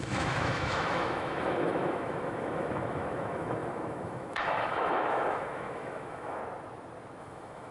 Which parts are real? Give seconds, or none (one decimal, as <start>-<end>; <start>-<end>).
6.4-7.2